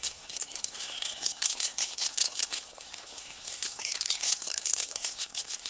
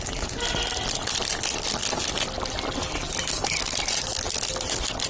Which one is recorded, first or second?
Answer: second